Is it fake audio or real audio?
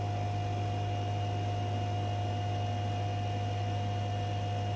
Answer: real